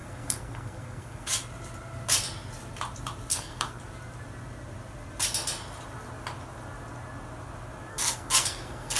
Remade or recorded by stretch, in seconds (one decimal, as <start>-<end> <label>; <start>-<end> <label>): 0.0-1.3 remade; 1.3-3.3 recorded; 3.3-3.8 remade; 3.8-7.9 recorded; 7.9-9.0 remade